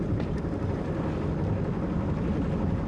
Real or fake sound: real